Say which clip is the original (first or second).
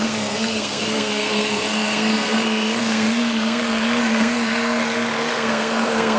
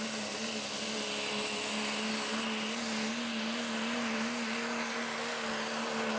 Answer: second